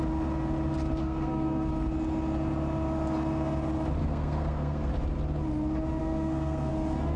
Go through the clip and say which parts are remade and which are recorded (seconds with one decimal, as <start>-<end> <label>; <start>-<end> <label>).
0.0-1.0 recorded; 1.0-1.7 remade; 1.7-4.0 recorded; 4.0-4.9 remade; 4.9-6.0 recorded; 6.0-6.7 remade; 6.7-7.2 recorded